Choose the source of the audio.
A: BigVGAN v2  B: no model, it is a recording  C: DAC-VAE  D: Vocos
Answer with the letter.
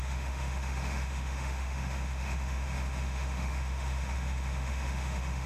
C